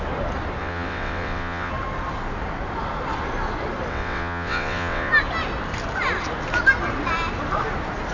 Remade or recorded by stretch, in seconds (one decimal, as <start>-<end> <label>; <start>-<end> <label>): 0.0-0.6 recorded; 0.6-1.7 remade; 1.7-3.9 recorded; 3.9-5.1 remade; 5.1-8.1 recorded